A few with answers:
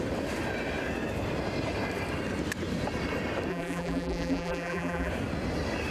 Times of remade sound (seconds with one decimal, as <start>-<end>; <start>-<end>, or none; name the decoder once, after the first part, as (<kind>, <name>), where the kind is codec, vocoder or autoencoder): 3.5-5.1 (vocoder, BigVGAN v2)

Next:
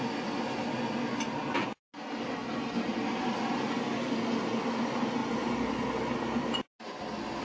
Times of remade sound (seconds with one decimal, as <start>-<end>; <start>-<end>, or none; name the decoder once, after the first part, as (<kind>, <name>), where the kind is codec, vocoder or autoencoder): 2.9-3.5 (vocoder, BigVGAN v2)

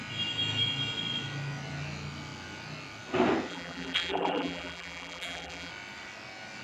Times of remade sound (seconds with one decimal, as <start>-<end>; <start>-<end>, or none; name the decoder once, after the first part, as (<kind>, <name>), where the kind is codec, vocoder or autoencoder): 3.5-5.7 (vocoder, BigVGAN v2)

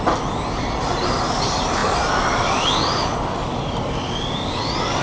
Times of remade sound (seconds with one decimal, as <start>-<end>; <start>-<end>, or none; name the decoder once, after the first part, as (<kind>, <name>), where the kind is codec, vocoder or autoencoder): none